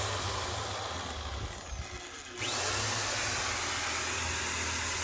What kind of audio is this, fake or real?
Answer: real